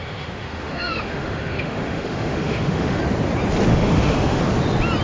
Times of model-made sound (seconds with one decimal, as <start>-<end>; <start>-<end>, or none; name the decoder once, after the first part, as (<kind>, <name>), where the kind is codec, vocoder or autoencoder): 0.0-3.0 (autoencoder, DAC-VAE); 3.7-4.4